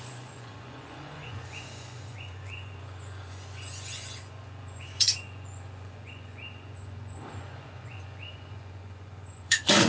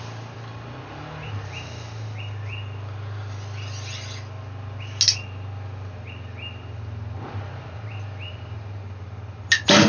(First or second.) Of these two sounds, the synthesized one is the first